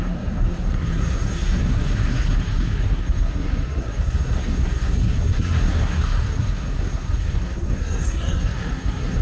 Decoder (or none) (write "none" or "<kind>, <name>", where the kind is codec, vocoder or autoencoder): codec, SNAC